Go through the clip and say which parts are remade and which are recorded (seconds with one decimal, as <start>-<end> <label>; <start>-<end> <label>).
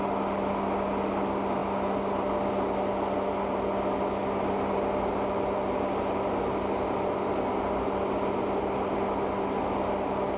0.0-10.4 recorded